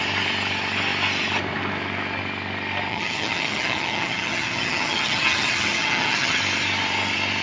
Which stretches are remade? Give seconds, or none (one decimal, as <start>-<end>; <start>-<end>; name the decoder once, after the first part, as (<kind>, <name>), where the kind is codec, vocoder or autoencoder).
2.9-6.4 (vocoder, HiFi-GAN)